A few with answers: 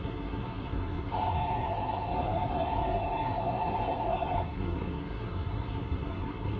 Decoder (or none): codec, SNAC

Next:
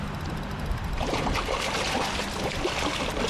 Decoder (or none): none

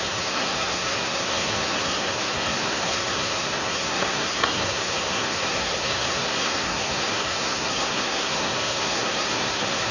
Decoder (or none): codec, SNAC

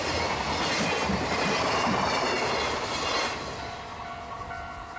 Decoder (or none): none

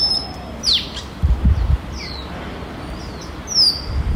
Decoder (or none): none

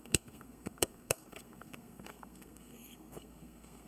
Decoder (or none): codec, SNAC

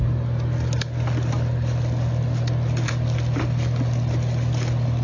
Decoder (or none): none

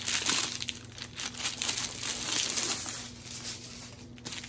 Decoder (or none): none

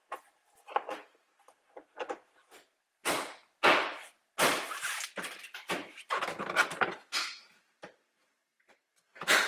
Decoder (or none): none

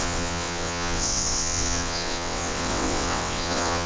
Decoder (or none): vocoder, WaveNeXt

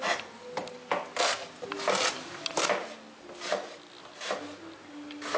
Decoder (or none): none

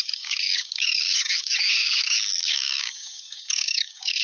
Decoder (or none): codec, DAC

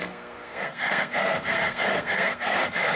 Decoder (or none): codec, SNAC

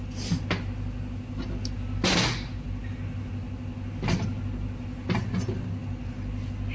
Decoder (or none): none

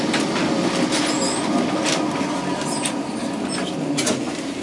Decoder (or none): none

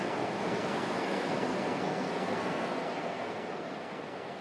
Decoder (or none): codec, SNAC